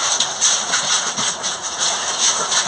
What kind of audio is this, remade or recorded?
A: remade